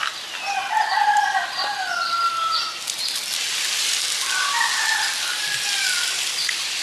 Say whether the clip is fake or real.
real